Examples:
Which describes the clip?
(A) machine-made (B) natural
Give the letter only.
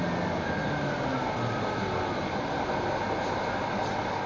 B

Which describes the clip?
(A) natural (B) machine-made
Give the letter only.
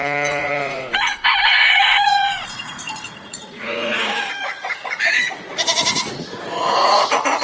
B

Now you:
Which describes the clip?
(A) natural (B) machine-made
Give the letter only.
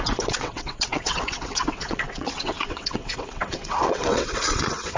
B